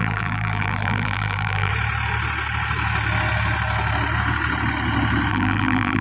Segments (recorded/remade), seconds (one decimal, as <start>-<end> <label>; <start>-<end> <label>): 0.0-1.7 remade; 1.7-5.3 recorded; 5.3-6.0 remade